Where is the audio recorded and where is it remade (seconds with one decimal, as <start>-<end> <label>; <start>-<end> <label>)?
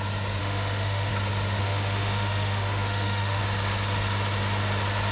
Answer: 0.0-0.4 recorded; 0.4-1.1 remade; 1.1-1.6 recorded; 1.6-3.4 remade; 3.4-5.1 recorded